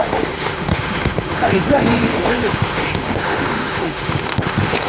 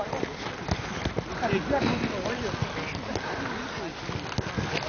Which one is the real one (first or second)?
second